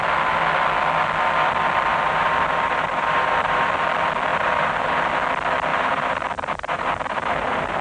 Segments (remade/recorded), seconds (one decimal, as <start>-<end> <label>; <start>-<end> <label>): 0.0-1.9 recorded; 1.9-3.7 remade; 3.7-4.3 recorded; 4.3-5.1 remade; 5.1-5.7 recorded; 5.7-7.8 remade

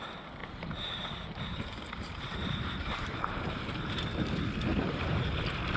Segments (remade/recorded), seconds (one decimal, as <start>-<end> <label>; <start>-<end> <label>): 0.0-0.4 recorded; 0.4-3.9 remade; 3.9-4.7 recorded; 4.7-5.3 remade; 5.3-5.8 recorded

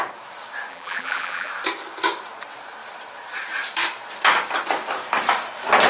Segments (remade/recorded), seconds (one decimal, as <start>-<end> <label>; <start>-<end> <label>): 0.0-0.7 recorded; 0.7-1.5 remade; 1.5-5.9 recorded

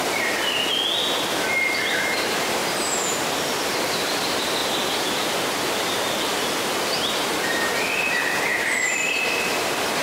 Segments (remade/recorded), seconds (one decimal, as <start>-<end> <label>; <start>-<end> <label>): 0.0-0.7 remade; 0.7-1.9 recorded; 1.9-4.6 remade; 4.6-6.2 recorded; 6.2-10.0 remade

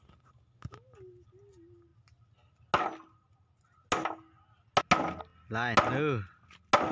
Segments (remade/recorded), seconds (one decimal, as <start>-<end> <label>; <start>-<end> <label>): 0.0-6.9 recorded

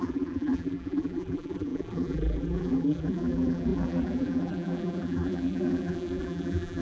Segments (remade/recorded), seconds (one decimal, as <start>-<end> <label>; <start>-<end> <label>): 0.0-6.8 remade